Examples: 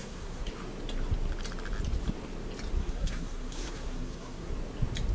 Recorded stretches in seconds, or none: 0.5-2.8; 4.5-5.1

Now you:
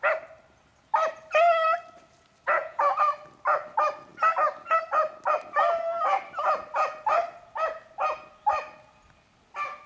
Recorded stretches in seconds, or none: 0.0-2.6; 3.1-9.9

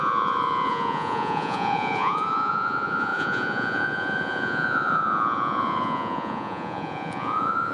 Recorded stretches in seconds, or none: none

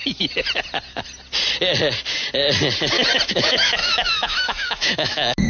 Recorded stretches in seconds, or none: 0.0-3.3

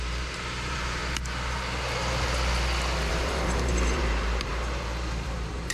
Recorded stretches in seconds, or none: 1.0-3.1

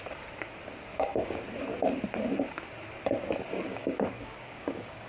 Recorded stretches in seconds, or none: 0.0-0.9; 1.4-3.7

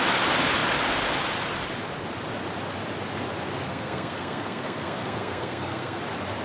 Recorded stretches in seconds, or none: 0.0-3.7; 6.0-6.4

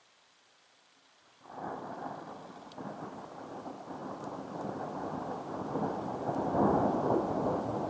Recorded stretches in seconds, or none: 0.0-7.9